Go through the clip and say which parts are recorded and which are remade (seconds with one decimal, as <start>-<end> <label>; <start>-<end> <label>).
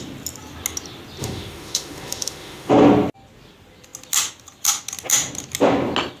0.0-1.2 recorded; 1.2-2.7 remade; 2.7-6.2 recorded